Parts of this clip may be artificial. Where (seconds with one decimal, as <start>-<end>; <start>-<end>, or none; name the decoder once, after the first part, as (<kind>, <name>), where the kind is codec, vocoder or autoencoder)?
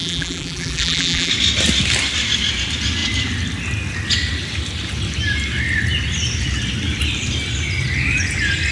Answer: 0.0-1.3 (vocoder, BigVGAN v2)